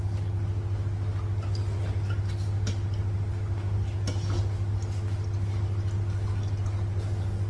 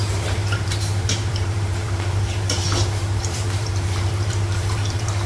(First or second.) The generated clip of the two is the second